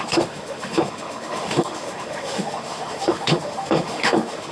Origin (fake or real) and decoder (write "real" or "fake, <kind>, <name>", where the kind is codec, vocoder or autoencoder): fake, autoencoder, DAC-VAE